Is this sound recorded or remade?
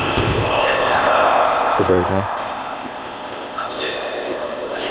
remade